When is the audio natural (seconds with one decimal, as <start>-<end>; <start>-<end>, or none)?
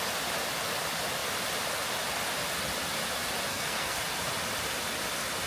0.0-3.5; 4.0-5.5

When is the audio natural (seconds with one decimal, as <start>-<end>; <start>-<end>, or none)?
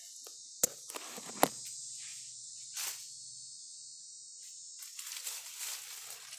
0.0-6.4